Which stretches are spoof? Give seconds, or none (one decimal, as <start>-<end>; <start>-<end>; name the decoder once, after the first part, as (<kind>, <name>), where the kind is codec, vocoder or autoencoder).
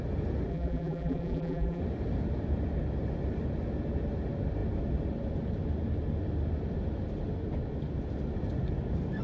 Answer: 0.5-1.8 (vocoder, BigVGAN v2)